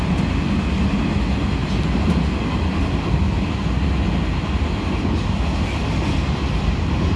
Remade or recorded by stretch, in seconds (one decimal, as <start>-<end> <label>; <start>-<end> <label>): 0.0-7.2 recorded